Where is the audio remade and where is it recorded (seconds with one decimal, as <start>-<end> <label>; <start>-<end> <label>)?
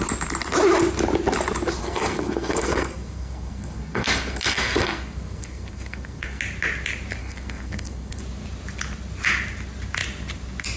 0.0-1.8 recorded; 1.8-6.4 remade; 6.4-7.2 recorded; 7.2-8.2 remade; 8.2-10.8 recorded